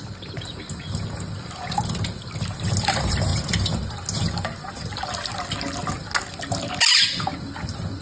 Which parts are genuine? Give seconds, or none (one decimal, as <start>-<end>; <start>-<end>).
0.0-8.0